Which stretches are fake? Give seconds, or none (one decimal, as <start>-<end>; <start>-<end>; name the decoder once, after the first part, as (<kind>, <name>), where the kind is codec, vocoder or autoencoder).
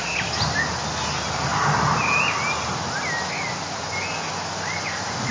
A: none